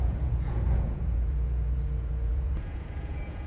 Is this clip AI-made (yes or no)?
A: yes